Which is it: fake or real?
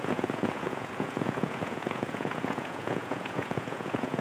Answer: fake